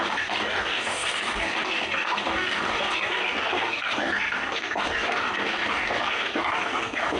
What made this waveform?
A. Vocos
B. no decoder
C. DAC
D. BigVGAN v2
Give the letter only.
C